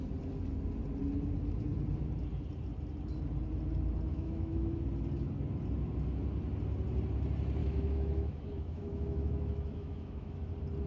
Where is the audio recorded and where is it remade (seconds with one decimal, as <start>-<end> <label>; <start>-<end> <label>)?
0.0-4.1 recorded; 4.1-4.8 remade; 4.8-7.6 recorded; 7.6-10.5 remade; 10.5-10.9 recorded